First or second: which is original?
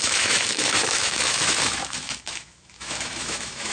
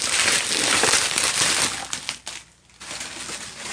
second